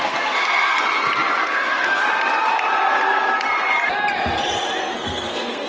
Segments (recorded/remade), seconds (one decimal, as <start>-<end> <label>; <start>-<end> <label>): 0.0-0.8 remade; 0.8-1.4 recorded; 1.4-2.0 remade; 2.0-4.8 recorded; 4.8-5.7 remade